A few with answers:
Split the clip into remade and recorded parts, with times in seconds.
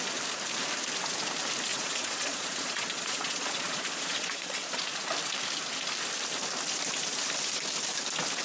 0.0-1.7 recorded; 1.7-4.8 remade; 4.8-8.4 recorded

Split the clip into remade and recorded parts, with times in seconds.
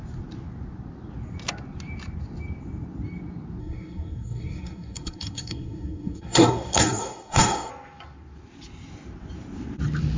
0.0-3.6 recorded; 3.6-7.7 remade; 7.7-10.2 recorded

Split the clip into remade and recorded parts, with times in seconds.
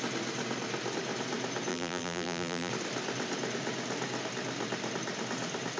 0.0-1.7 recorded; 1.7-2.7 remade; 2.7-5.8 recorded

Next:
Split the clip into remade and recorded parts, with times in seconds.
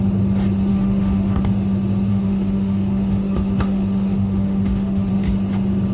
0.0-0.7 recorded; 0.7-1.4 remade; 1.4-2.1 recorded; 2.1-5.1 remade; 5.1-5.9 recorded